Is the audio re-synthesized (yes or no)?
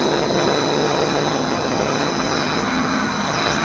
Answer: yes